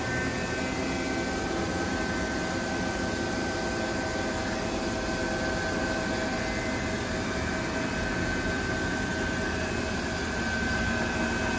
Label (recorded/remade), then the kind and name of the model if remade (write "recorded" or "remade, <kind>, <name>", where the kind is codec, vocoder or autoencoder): recorded